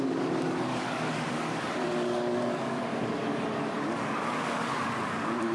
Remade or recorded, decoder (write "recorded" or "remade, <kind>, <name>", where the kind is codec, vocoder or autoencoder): remade, codec, DAC